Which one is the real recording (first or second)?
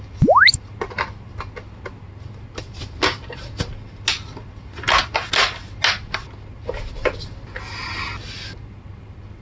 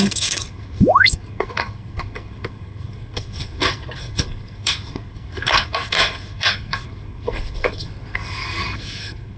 first